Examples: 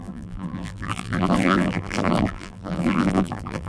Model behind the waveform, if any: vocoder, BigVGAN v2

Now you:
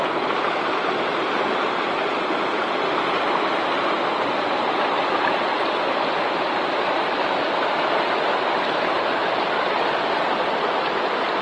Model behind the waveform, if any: none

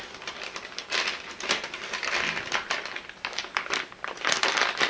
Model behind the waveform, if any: vocoder, BigVGAN v2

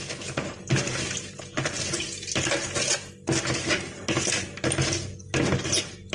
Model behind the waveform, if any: none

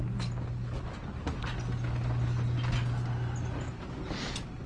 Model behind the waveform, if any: none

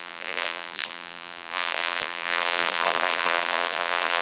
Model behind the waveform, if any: vocoder, BigVGAN v2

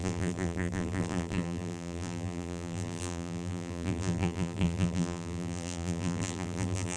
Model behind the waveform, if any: vocoder, BigVGAN v2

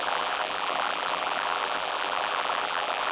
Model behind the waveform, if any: vocoder, BigVGAN v2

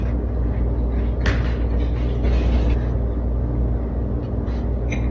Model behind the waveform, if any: none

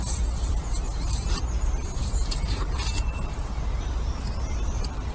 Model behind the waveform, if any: vocoder, BigVGAN v2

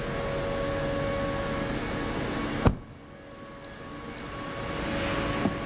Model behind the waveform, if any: none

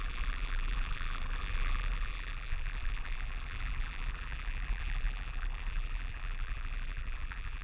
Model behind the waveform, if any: vocoder, BigVGAN v2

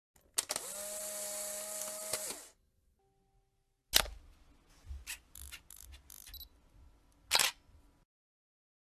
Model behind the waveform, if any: none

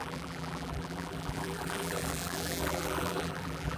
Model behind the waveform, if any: vocoder, BigVGAN v2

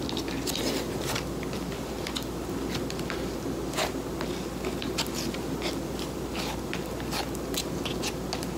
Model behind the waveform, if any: none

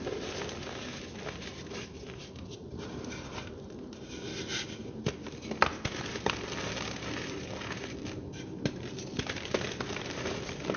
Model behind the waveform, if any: none